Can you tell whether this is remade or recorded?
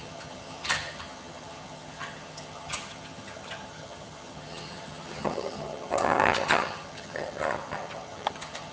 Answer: remade